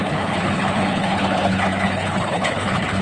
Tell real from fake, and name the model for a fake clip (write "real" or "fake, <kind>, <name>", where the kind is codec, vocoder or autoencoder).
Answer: fake, codec, HILCodec